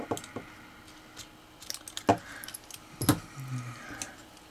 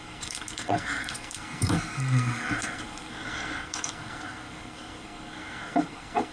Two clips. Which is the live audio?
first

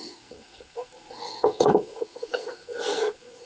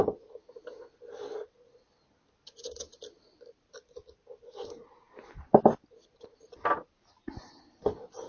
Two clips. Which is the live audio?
second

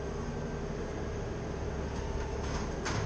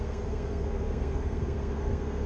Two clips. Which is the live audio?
first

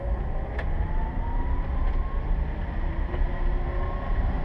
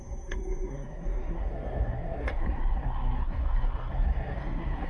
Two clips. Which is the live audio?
first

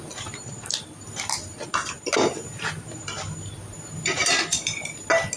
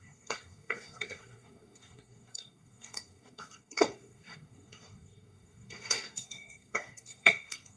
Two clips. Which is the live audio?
first